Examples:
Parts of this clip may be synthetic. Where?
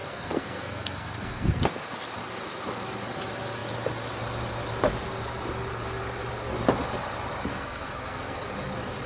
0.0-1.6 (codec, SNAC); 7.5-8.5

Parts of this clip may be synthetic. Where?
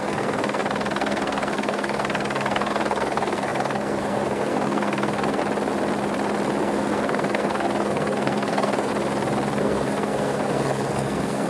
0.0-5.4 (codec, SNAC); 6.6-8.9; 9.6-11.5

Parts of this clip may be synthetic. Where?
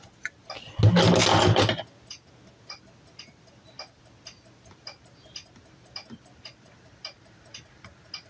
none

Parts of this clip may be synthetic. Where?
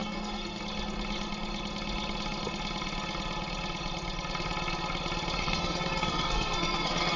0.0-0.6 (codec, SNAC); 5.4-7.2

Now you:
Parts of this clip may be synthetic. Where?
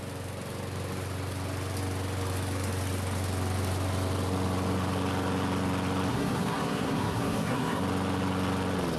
6.1-7.8 (codec, SNAC)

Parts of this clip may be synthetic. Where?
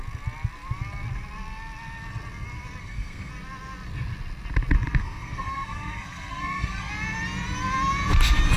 2.8-3.3 (codec, SNAC); 5.0-6.9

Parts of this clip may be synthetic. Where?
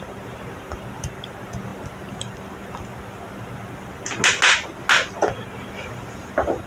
none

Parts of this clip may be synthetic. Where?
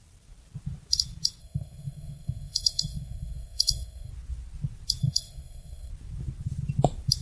1.4-4.1 (codec, SNAC); 5.0-5.9